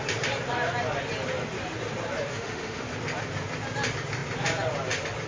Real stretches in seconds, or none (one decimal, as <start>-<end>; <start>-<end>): 0.0-2.3; 2.9-5.3